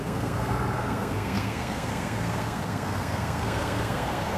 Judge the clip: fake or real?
fake